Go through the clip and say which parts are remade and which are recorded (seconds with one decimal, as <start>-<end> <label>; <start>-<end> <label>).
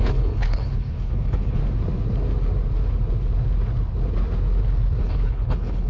0.0-1.6 remade; 1.6-5.0 recorded; 5.0-5.9 remade